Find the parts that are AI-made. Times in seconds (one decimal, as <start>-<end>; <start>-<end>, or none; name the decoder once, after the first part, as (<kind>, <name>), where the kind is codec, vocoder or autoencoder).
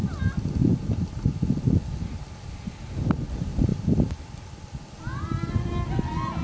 none